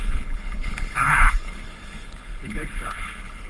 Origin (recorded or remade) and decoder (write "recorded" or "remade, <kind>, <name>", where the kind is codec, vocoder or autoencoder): remade, codec, HILCodec